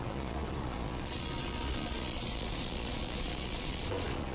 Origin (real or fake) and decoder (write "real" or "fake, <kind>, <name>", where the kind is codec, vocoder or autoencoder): fake, vocoder, Vocos